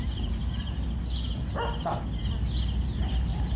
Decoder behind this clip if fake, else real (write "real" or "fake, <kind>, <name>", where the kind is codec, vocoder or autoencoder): real